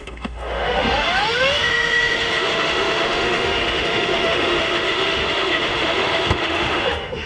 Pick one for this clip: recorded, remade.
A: remade